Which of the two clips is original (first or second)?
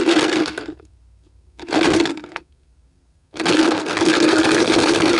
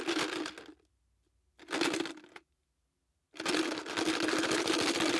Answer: second